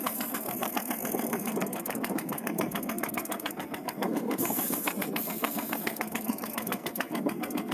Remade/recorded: remade